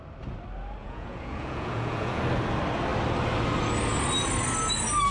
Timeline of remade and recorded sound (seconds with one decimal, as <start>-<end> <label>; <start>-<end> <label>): 0.0-0.8 recorded; 0.8-2.2 remade; 2.2-5.1 recorded